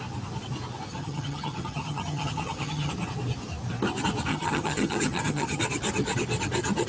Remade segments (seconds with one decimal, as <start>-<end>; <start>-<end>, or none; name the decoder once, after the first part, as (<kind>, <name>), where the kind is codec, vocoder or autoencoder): 0.9-2.9 (vocoder, HiFi-GAN); 4.3-5.6